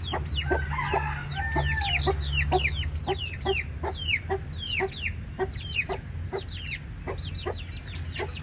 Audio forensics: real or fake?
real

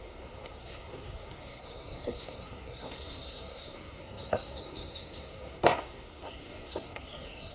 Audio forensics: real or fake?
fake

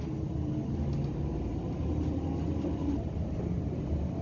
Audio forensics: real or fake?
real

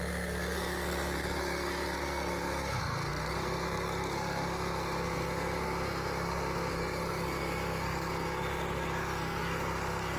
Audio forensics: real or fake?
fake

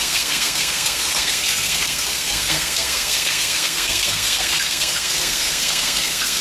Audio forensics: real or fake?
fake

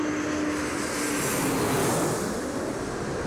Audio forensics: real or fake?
real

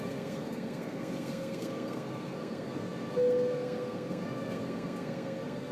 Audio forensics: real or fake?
fake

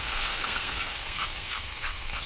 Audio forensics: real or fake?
fake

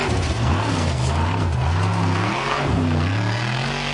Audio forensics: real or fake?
fake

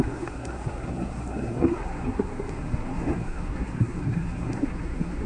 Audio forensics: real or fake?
fake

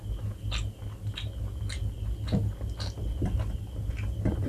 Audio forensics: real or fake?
real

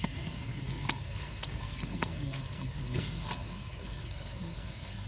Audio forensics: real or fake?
fake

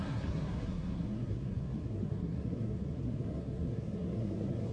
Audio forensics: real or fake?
fake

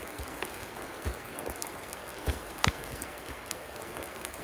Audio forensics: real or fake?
fake